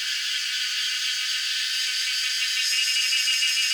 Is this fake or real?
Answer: fake